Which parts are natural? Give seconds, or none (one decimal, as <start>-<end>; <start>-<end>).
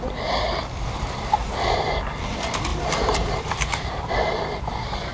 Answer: 0.0-2.7